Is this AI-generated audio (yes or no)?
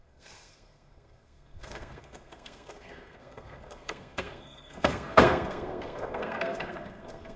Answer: yes